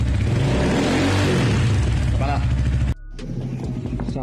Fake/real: real